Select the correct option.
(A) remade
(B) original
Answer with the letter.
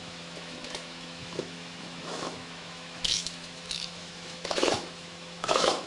A